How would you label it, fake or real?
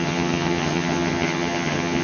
fake